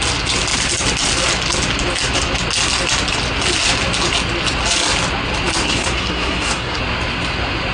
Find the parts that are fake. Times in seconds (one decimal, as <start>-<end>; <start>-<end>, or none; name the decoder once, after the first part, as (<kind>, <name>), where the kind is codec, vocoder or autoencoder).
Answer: 5.6-6.8 (codec, SNAC)